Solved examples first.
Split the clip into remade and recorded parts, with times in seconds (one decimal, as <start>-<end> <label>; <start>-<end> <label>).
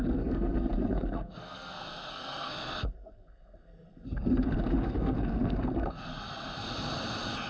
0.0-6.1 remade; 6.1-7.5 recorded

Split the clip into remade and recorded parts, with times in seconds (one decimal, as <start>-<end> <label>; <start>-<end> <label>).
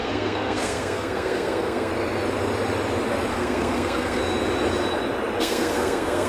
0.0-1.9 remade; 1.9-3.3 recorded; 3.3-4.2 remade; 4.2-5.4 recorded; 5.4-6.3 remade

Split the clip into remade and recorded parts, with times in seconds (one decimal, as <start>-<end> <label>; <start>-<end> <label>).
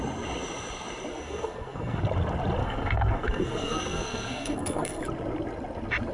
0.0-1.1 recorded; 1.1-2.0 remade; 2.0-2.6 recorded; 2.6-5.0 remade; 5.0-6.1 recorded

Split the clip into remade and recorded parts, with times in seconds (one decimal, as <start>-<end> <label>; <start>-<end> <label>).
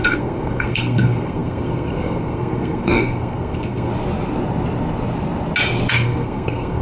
0.0-3.9 remade; 3.9-5.9 recorded; 5.9-6.8 remade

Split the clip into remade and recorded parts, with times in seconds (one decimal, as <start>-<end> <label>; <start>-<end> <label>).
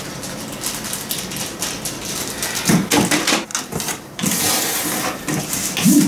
0.0-6.1 recorded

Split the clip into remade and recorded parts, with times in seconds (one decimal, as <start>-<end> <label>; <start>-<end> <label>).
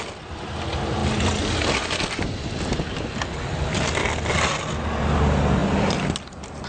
0.0-6.7 recorded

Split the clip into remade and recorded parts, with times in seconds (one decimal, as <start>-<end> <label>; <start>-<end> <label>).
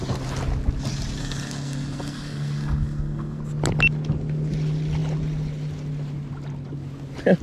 0.0-1.2 recorded; 1.2-3.4 remade; 3.4-7.4 recorded